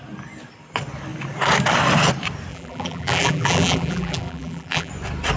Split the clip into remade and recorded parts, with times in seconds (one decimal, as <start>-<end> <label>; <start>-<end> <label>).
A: 0.0-2.5 recorded; 2.5-4.9 remade; 4.9-5.4 recorded